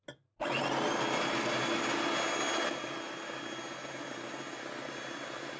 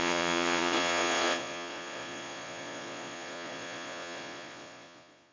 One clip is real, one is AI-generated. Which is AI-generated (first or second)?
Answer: second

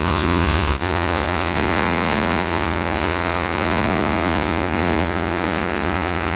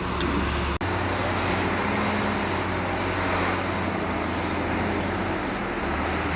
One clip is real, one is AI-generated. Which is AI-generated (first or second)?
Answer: first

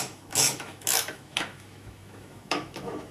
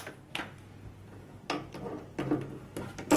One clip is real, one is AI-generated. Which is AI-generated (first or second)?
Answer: first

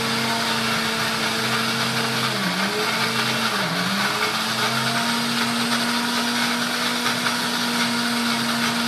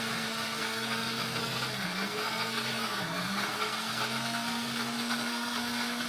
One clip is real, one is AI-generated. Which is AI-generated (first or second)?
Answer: second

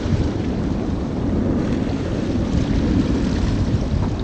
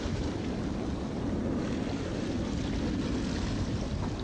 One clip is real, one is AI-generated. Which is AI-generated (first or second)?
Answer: first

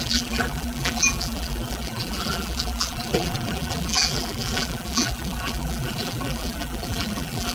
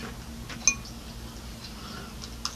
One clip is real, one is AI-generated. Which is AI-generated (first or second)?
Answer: first